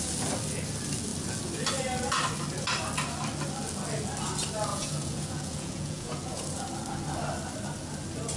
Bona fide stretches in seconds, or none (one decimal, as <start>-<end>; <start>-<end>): 0.0-4.7; 6.4-8.4